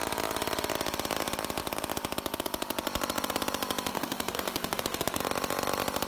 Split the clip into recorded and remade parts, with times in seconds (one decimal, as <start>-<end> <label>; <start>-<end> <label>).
0.0-3.9 recorded; 3.9-5.2 remade; 5.2-6.1 recorded